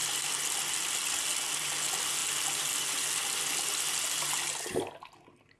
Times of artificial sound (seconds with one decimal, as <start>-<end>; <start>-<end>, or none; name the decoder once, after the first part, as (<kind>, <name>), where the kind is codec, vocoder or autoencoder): none